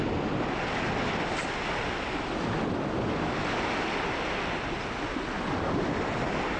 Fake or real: real